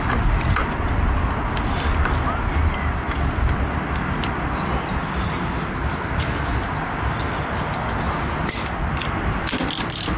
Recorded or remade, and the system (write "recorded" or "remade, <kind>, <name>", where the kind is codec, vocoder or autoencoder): recorded